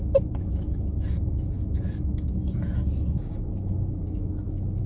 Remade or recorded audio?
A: remade